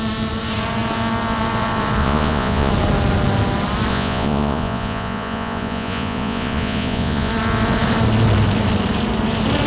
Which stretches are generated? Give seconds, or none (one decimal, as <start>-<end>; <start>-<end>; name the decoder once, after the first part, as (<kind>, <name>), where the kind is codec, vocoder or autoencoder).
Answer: 2.0-2.7 (vocoder, Vocos); 3.9-7.3